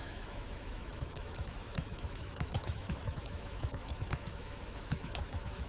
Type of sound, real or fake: fake